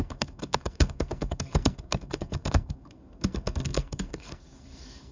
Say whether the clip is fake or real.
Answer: fake